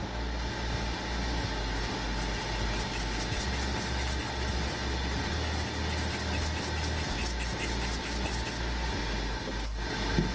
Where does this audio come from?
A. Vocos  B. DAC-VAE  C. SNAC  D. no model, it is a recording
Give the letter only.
D